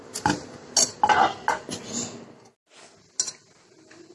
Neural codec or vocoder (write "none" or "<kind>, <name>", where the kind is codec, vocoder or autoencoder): none